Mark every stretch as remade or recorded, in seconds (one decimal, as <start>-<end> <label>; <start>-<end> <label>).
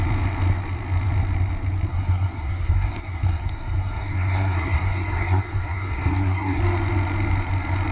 0.0-1.9 recorded; 1.9-6.6 remade; 6.6-7.9 recorded